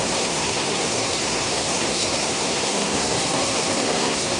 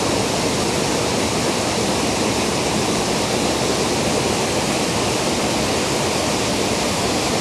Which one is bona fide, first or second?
second